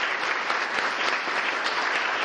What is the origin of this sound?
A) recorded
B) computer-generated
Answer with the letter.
A